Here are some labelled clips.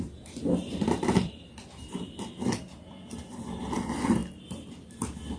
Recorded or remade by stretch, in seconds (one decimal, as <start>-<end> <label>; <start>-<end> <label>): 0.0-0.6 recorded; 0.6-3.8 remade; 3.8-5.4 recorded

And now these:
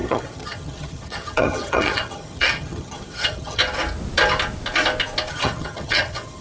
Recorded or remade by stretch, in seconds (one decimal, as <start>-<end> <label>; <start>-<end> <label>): 0.0-3.6 remade; 3.6-5.3 recorded; 5.3-6.4 remade

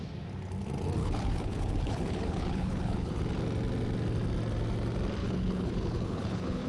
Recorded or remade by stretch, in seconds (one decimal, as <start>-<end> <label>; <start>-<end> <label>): 0.0-1.0 recorded; 1.0-3.2 remade; 3.2-5.2 recorded; 5.2-6.7 remade

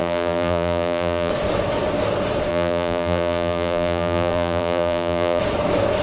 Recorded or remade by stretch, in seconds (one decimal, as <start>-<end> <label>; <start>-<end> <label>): 0.0-1.3 remade; 1.3-2.5 recorded; 2.5-5.4 remade; 5.4-6.0 recorded

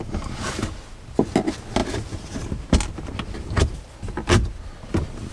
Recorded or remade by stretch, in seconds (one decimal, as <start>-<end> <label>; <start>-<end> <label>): 0.0-5.3 recorded